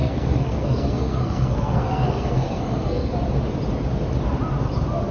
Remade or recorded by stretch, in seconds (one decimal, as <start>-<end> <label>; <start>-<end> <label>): 0.0-3.1 remade; 3.1-5.1 recorded